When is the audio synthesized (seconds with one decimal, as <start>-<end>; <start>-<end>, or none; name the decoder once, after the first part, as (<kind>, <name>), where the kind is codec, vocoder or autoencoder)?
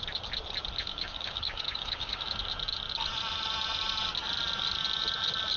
0.9-2.2 (codec, DAC)